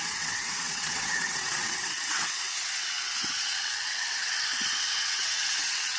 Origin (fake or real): fake